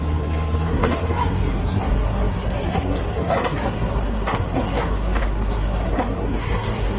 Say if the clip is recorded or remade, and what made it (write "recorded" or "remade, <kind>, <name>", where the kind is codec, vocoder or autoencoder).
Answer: remade, codec, SNAC